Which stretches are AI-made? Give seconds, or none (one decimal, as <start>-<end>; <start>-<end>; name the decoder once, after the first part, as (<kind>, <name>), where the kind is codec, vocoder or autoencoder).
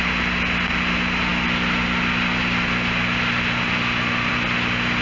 none